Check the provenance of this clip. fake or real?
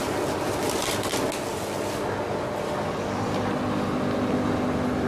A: real